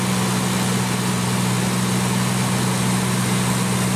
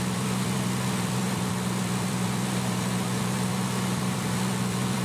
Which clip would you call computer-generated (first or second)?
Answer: second